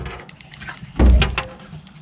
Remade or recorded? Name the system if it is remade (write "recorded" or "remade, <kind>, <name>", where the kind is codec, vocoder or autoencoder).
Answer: recorded